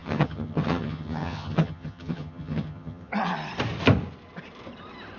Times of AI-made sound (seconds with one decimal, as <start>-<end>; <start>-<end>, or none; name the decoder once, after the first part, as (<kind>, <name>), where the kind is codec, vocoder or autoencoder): 0.0-3.1 (vocoder, HiFi-GAN)